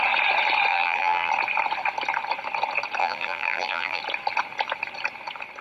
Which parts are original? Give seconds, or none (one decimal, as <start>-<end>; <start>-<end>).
0.0-0.7; 1.3-3.0; 4.0-5.6